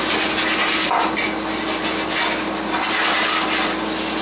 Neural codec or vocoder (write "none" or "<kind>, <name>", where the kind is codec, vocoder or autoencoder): none